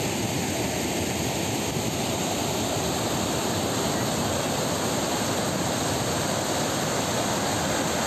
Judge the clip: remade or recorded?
recorded